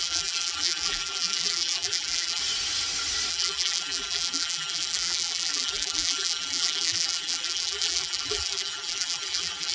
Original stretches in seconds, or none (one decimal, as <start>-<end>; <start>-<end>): 2.4-3.3